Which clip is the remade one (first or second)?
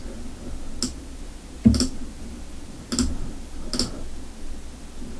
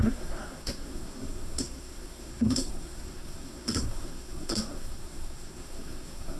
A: second